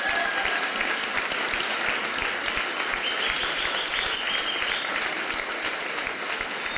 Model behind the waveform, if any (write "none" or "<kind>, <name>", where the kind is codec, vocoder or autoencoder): none